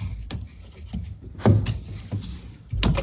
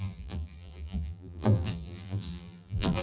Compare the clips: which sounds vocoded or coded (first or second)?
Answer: second